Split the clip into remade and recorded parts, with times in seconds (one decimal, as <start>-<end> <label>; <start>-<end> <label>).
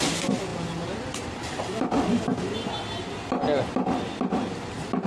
0.0-5.1 recorded